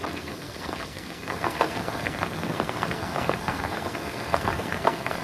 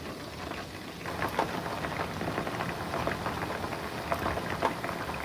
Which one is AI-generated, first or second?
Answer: first